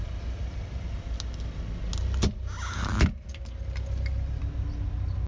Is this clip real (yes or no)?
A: yes